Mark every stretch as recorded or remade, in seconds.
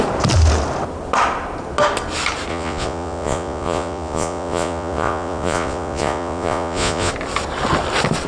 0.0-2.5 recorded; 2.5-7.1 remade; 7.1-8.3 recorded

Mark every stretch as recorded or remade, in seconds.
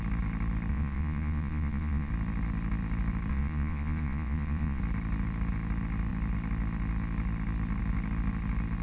0.0-0.7 recorded; 0.7-2.1 remade; 2.1-3.3 recorded; 3.3-4.8 remade; 4.8-8.8 recorded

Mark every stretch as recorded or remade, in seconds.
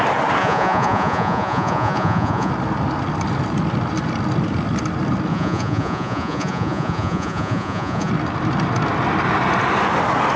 0.0-0.4 recorded; 0.4-2.5 remade; 2.5-5.3 recorded; 5.3-8.1 remade; 8.1-10.4 recorded